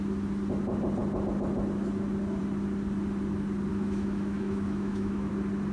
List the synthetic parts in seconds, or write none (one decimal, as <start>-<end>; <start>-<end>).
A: 3.7-5.3